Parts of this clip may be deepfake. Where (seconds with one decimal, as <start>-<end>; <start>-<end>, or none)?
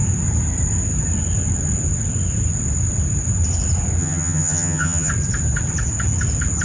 4.0-5.1